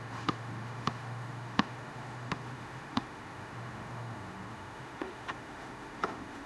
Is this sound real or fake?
fake